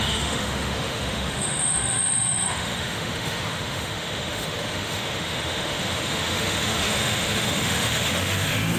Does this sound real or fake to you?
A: fake